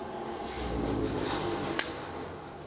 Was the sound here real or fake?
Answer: real